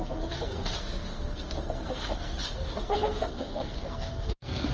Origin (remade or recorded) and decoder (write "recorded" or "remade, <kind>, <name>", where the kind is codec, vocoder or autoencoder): remade, codec, SNAC